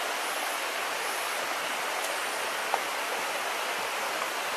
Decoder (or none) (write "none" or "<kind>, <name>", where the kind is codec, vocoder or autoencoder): none